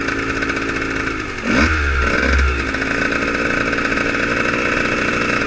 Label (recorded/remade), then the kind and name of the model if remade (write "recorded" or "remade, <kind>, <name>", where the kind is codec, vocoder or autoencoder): recorded